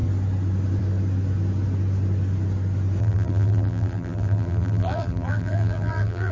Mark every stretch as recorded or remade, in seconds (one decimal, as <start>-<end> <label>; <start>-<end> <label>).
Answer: 0.0-3.0 recorded; 3.0-6.3 remade